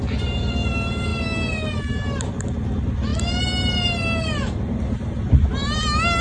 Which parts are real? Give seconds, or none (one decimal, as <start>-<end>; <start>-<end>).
0.0-6.2